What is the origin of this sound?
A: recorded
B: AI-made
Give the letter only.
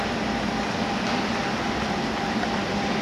A